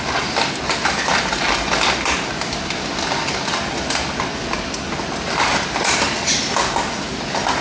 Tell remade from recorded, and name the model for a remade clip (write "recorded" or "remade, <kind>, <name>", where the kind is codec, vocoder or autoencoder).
recorded